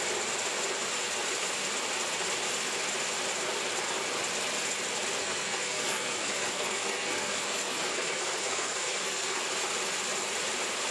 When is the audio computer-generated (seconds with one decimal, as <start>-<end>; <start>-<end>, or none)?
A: 5.2-9.4